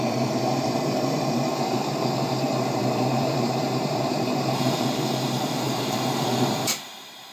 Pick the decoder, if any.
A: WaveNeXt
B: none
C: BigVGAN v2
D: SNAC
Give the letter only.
C